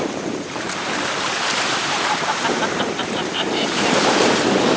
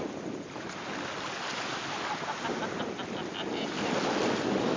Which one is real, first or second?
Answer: second